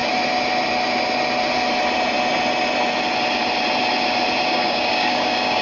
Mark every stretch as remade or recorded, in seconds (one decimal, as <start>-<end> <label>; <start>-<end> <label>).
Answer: 0.0-4.5 recorded; 4.5-5.6 remade